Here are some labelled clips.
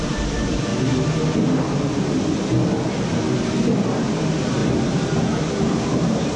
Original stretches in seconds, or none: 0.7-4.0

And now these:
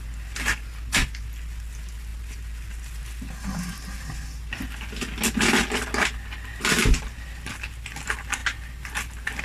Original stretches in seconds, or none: 0.0-9.4

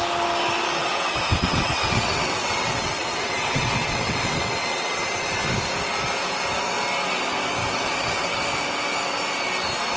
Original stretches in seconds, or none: 0.0-0.9; 5.0-7.6; 8.4-10.0

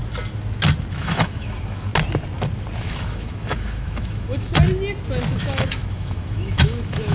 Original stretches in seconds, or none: 0.0-0.9; 1.9-2.8; 4.5-5.4

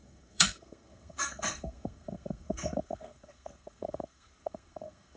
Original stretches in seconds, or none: none

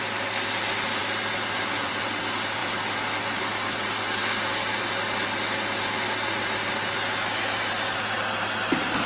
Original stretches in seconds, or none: 0.0-1.0; 2.2-9.1